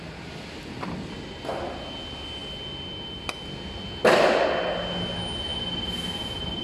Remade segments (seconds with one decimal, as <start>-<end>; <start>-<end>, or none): none